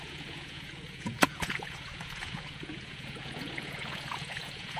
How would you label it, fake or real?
fake